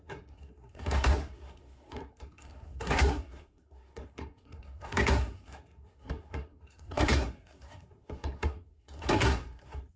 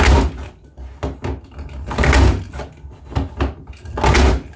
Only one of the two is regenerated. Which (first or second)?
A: first